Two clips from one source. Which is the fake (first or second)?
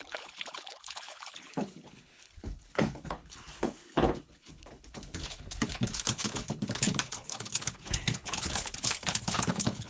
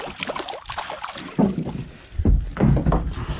first